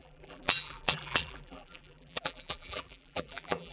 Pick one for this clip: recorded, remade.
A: remade